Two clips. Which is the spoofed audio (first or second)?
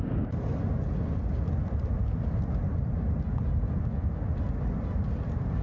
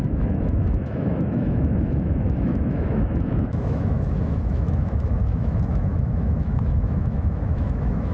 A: second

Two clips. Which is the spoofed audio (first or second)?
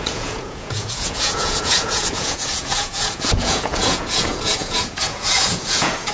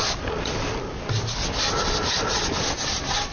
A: first